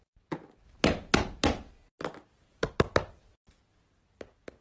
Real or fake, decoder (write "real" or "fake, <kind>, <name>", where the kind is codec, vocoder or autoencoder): real